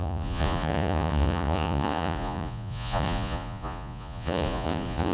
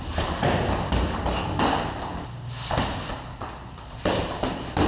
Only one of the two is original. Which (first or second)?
second